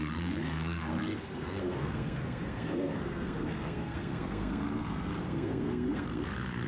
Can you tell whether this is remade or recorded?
remade